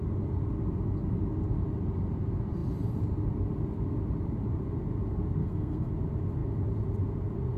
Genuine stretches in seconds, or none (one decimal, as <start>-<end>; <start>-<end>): 0.0-5.4; 5.9-7.6